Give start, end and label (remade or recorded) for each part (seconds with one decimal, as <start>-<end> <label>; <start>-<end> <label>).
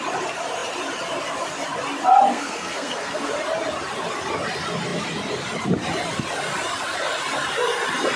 0.0-2.3 recorded; 2.3-3.3 remade; 3.3-8.2 recorded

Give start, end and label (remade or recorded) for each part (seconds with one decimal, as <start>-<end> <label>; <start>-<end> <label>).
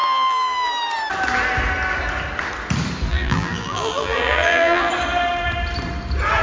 0.0-0.7 remade; 0.7-3.1 recorded; 3.1-4.9 remade; 4.9-6.4 recorded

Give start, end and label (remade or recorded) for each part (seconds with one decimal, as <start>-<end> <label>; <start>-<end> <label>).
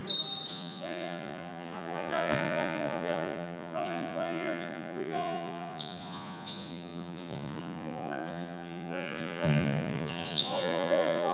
0.0-0.5 recorded; 0.5-11.3 remade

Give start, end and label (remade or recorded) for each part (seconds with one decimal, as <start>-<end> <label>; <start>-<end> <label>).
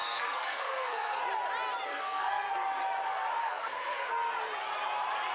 0.0-1.2 remade; 1.2-1.9 recorded; 1.9-2.5 remade; 2.5-3.4 recorded; 3.4-4.1 remade; 4.1-5.3 recorded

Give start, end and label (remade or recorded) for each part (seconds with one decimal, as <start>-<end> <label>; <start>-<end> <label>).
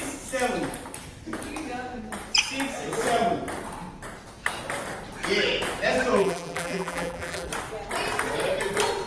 0.0-6.2 recorded; 6.2-7.5 remade; 7.5-9.1 recorded